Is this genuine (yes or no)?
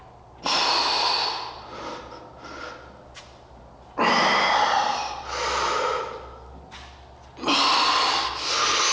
yes